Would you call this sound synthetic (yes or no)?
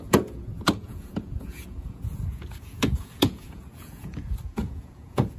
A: yes